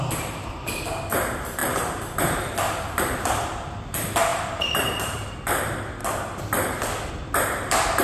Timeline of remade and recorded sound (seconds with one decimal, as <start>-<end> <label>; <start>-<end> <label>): 0.0-4.3 recorded; 4.3-5.3 remade; 5.3-8.0 recorded